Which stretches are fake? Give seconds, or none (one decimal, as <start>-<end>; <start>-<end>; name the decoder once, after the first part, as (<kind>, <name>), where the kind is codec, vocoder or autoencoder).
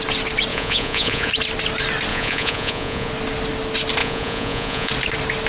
0.5-1.3 (vocoder, Vocos); 2.1-3.1; 4.0-4.9